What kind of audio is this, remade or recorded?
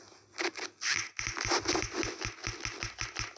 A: recorded